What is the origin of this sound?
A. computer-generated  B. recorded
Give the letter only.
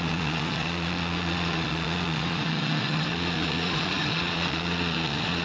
A